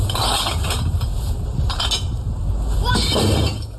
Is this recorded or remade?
recorded